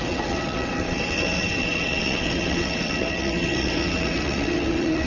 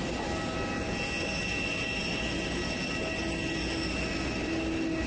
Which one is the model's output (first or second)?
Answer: first